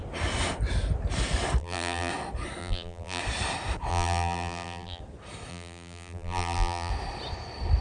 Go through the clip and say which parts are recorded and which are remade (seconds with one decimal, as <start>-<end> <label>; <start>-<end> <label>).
0.0-1.6 recorded; 1.6-2.1 remade; 2.1-2.6 recorded; 2.6-3.2 remade; 3.2-3.9 recorded; 3.9-5.0 remade; 5.0-5.5 recorded; 5.5-6.9 remade; 6.9-7.8 recorded